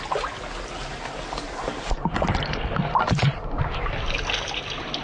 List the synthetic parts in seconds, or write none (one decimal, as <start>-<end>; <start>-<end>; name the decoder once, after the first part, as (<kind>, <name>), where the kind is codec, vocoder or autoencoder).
0.8-2.4 (vocoder, BigVGAN v2)